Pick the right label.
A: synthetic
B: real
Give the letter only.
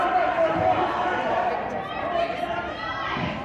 A